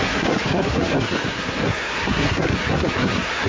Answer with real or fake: fake